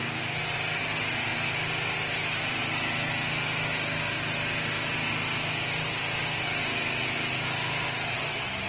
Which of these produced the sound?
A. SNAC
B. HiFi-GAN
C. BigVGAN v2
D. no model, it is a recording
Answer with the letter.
D